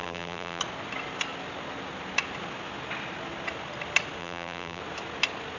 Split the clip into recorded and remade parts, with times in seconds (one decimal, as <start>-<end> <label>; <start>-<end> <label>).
0.0-0.6 remade; 0.6-4.2 recorded; 4.2-4.8 remade; 4.8-5.6 recorded